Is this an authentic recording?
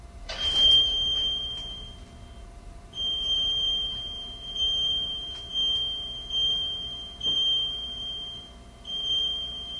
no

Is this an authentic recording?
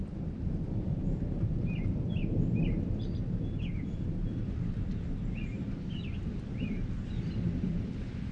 no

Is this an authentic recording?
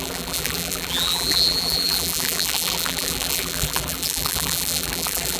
no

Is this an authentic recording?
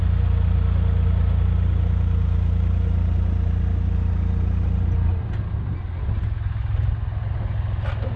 yes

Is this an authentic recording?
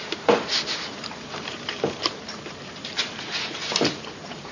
no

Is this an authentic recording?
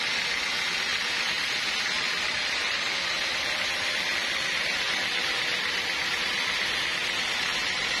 yes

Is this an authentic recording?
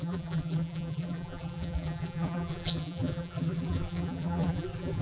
no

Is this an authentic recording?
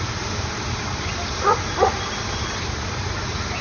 no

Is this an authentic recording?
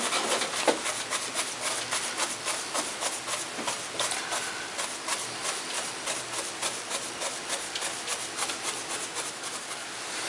yes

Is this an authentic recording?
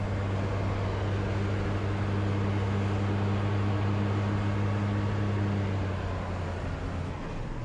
yes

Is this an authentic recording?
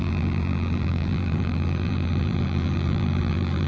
no